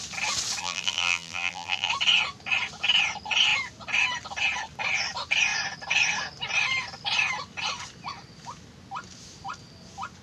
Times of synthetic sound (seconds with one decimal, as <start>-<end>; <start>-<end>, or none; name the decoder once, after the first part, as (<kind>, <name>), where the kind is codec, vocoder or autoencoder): 0.6-1.9 (vocoder, BigVGAN v2)